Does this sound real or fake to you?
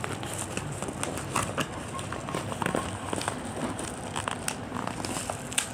real